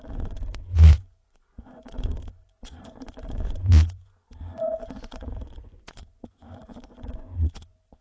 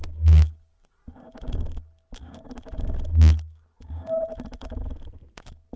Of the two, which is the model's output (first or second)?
first